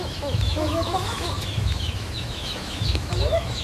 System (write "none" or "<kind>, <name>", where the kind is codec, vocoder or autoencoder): autoencoder, DAC-VAE